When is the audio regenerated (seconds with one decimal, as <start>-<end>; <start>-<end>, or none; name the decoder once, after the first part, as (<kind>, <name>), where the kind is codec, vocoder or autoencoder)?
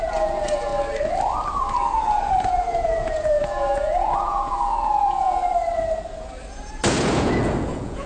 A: 0.0-0.7 (vocoder, Vocos); 2.3-5.4; 6.9-8.1